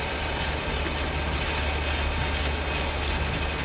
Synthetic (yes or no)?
no